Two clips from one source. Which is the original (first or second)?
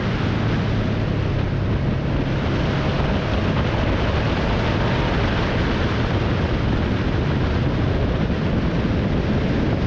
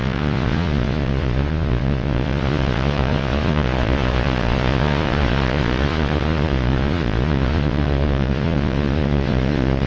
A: first